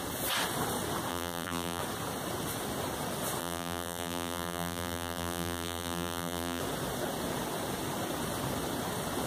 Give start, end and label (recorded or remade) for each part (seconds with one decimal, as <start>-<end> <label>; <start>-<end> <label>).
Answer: 0.0-1.1 recorded; 1.1-1.8 remade; 1.8-3.4 recorded; 3.4-6.6 remade; 6.6-9.3 recorded